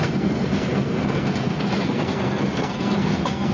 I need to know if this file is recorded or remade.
remade